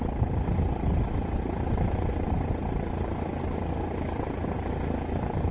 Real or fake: real